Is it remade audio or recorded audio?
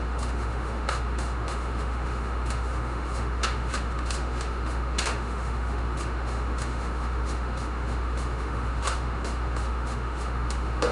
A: remade